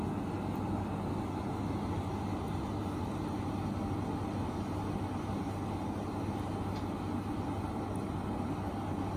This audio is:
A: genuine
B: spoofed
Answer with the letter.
A